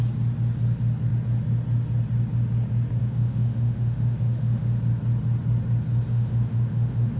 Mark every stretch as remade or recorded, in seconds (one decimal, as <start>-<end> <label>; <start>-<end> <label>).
0.0-3.0 recorded; 3.0-4.8 remade; 4.8-6.1 recorded; 6.1-7.2 remade